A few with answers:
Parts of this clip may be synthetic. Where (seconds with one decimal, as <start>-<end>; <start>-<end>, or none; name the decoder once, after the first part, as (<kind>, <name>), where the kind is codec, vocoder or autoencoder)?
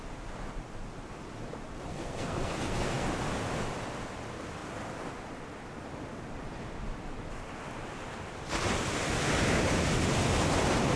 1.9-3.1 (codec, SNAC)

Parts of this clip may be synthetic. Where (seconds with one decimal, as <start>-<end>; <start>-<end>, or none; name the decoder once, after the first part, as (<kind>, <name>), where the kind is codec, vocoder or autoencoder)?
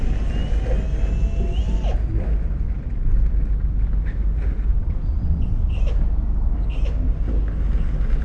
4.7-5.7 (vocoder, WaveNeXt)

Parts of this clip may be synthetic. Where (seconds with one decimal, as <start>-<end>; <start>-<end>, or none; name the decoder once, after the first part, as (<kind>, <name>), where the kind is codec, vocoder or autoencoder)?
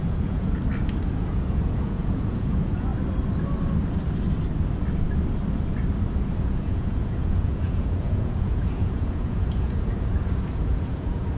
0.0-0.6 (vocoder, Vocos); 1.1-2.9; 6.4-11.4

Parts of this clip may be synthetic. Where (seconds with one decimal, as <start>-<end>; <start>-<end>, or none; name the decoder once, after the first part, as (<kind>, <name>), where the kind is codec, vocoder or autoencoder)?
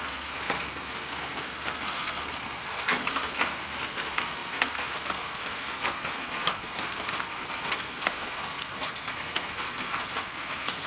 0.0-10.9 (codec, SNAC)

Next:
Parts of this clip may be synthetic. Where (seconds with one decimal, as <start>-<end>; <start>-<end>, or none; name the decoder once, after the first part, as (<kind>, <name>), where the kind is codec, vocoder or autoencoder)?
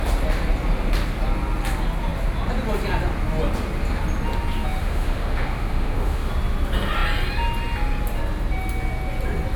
4.8-6.3 (autoencoder, DAC-VAE)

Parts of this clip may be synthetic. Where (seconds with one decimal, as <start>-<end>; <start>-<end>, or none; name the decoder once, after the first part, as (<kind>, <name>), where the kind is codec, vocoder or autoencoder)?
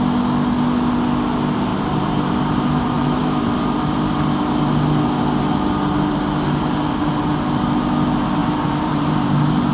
1.7-4.1 (vocoder, BigVGAN v2); 8.4-9.7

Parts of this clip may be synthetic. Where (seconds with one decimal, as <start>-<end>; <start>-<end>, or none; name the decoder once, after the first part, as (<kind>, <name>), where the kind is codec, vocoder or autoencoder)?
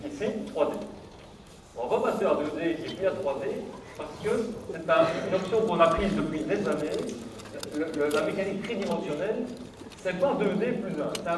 1.7-2.4 (vocoder, BigVGAN v2)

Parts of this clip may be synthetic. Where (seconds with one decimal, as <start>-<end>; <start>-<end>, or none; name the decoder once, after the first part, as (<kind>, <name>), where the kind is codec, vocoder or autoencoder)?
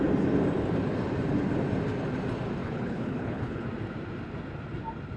2.6-3.6 (codec, HILCodec)